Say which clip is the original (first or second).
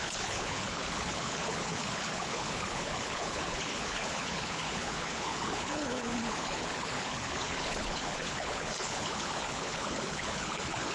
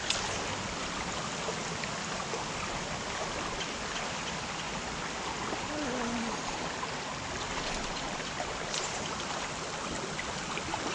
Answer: second